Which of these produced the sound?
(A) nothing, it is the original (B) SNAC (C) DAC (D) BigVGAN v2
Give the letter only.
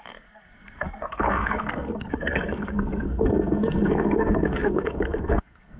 B